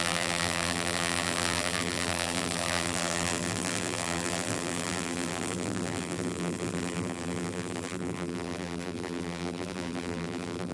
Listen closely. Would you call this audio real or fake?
fake